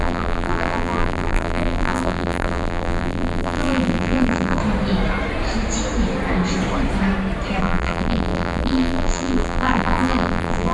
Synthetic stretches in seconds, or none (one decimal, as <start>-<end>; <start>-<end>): 0.0-4.6; 7.6-10.7